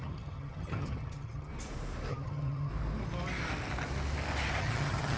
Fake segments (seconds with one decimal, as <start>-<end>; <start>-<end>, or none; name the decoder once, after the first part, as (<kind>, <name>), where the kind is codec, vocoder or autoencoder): 0.0-1.5 (vocoder, HiFi-GAN); 2.1-2.7; 4.6-5.2